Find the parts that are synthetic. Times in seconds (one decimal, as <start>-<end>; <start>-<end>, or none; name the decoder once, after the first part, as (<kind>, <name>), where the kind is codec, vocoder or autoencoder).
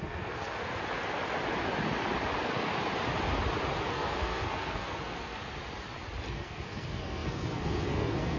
0.0-0.6 (codec, SNAC); 3.9-5.4; 6.3-8.4